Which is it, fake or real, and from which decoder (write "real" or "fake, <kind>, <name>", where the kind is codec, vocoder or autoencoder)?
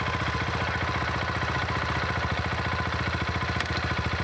real